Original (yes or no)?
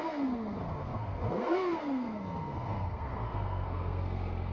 no